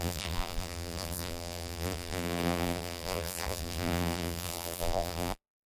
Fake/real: fake